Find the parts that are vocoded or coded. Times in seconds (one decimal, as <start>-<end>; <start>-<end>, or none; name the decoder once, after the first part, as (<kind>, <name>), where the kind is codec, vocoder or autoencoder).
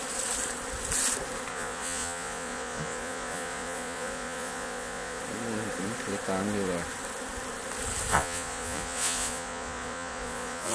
1.5-5.2 (vocoder, Vocos); 8.1-10.7